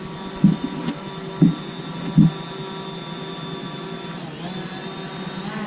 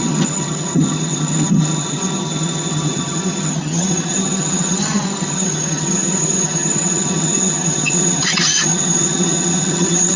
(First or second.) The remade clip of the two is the second